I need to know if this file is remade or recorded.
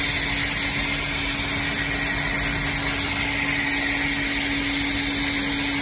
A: recorded